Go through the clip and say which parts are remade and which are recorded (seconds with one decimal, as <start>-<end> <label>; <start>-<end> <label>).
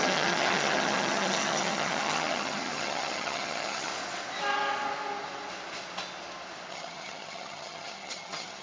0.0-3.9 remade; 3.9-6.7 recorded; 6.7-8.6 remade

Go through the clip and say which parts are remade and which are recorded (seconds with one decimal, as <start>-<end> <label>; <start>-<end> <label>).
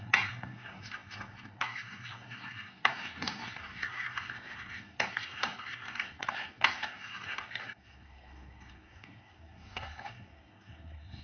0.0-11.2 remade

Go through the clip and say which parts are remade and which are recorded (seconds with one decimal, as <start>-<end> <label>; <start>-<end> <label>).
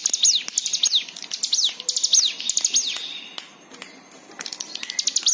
0.0-5.3 recorded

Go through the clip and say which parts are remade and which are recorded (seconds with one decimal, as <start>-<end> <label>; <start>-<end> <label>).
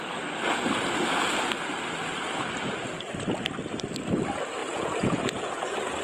0.0-4.6 recorded; 4.6-6.0 remade